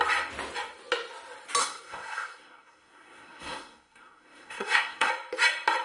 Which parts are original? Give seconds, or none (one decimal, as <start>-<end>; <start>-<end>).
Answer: 0.0-1.6; 5.1-5.8